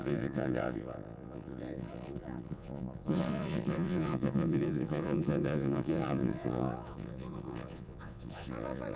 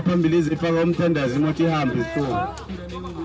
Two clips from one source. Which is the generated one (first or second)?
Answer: first